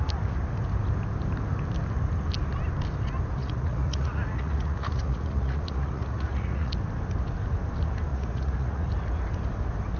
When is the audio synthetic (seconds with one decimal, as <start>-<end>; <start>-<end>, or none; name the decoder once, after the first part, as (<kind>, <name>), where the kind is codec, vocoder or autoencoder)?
3.4-6.7 (vocoder, Vocos); 8.1-8.9